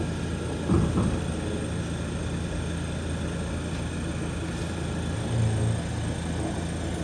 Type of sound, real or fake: real